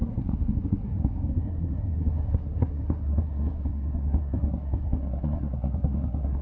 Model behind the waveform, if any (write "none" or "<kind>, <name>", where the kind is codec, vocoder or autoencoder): codec, SNAC